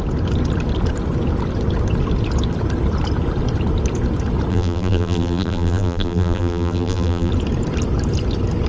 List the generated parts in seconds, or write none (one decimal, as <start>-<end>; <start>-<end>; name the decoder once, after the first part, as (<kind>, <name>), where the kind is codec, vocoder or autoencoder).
4.5-7.3 (vocoder, BigVGAN v2)